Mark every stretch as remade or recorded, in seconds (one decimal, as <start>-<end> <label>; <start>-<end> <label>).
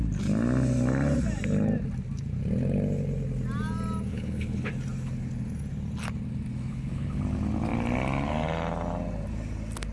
0.0-4.1 recorded; 4.1-4.7 remade; 4.7-6.7 recorded; 6.7-7.2 remade; 7.2-9.9 recorded